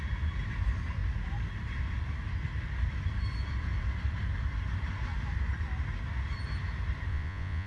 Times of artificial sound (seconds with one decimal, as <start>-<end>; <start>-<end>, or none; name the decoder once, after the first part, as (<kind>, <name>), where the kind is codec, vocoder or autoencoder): 7.1-7.7 (vocoder, Vocos)